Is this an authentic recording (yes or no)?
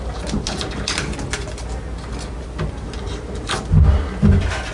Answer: yes